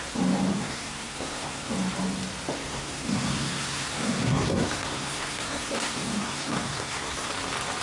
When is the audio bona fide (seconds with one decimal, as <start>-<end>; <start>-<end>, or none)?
0.0-0.5; 1.7-2.6; 7.3-7.8